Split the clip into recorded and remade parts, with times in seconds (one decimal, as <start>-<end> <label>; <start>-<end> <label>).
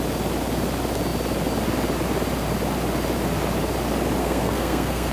0.0-4.2 recorded; 4.2-5.1 remade